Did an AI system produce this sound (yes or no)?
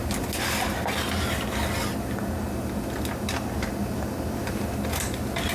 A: no